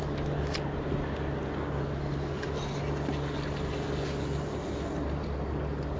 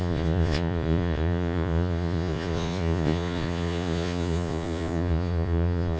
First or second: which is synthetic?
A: second